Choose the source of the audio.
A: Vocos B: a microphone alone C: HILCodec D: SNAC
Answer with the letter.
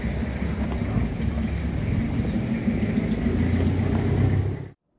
B